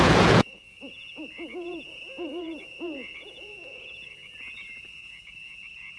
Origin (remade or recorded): remade